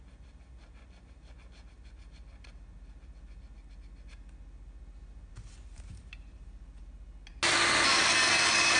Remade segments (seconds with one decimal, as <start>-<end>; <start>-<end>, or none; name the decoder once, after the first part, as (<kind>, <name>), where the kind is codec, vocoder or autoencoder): 5.3-6.8 (vocoder, BigVGAN v2)